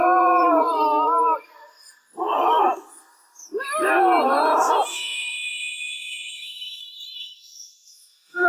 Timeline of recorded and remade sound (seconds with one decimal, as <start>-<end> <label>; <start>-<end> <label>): 0.0-4.9 recorded; 4.9-6.8 remade; 6.8-7.2 recorded; 7.2-8.5 remade